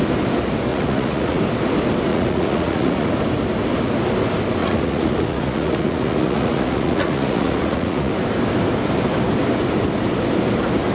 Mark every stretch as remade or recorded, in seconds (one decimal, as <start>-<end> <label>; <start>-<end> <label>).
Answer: 0.0-0.7 recorded; 0.7-1.4 remade; 1.4-2.1 recorded; 2.1-3.1 remade; 3.1-4.6 recorded; 4.6-8.1 remade; 8.1-10.9 recorded